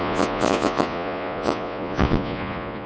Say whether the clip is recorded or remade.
remade